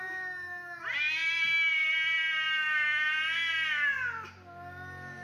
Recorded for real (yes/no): yes